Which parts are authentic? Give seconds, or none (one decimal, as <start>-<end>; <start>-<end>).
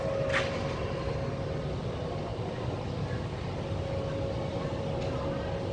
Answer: 0.0-5.7